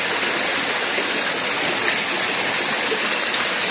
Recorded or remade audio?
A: recorded